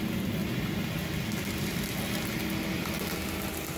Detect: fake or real real